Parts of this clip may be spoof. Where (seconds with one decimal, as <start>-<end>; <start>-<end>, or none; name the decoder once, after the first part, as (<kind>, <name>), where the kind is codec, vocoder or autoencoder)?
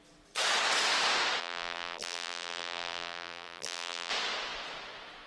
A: 1.4-4.1 (vocoder, BigVGAN v2)